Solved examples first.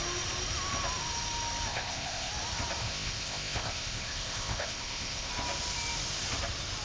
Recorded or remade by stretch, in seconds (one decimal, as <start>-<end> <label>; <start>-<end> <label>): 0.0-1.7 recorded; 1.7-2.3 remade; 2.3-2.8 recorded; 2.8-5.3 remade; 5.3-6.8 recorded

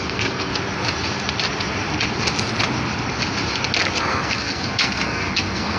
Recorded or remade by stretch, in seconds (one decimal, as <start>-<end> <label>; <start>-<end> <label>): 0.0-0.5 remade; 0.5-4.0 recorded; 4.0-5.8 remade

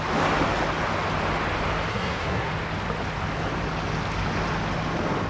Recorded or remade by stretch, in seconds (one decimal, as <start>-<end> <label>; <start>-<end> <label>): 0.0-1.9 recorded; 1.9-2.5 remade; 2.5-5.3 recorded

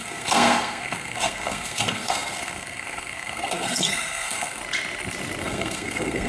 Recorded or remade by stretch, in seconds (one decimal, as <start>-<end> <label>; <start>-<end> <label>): 0.0-4.6 remade; 4.6-5.4 recorded; 5.4-6.3 remade

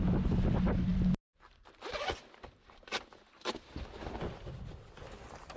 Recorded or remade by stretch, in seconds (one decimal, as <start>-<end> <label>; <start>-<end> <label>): 0.0-5.6 recorded

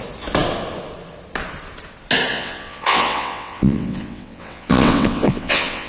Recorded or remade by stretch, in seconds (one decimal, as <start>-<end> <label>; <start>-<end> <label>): 0.0-2.3 recorded; 2.3-5.9 remade